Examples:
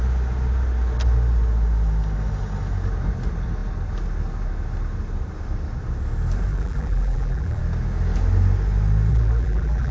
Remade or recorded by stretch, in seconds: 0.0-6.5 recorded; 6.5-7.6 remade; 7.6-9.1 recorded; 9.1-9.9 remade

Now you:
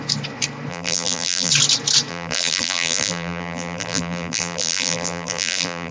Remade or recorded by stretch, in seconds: 0.0-0.7 recorded; 0.7-1.5 remade; 1.5-2.1 recorded; 2.1-5.9 remade

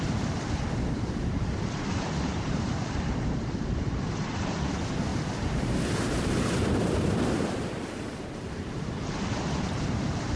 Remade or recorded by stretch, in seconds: 0.0-10.4 remade

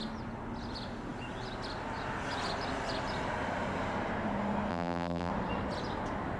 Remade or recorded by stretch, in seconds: 0.0-4.7 recorded; 4.7-5.3 remade; 5.3-6.4 recorded

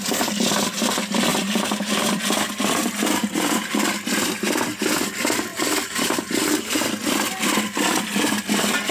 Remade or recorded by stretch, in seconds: 0.0-1.3 recorded; 1.3-2.2 remade; 2.2-2.8 recorded; 2.8-3.9 remade; 3.9-5.5 recorded; 5.5-6.8 remade; 6.8-8.9 recorded